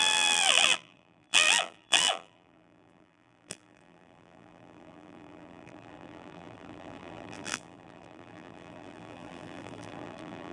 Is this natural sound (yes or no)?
no